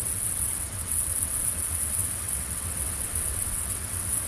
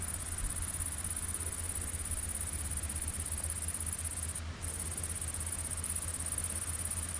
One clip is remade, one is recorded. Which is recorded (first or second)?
second